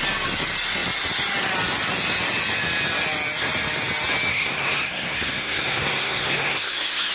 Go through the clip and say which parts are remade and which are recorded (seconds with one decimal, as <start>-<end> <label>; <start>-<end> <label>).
0.0-4.3 recorded; 4.3-7.1 remade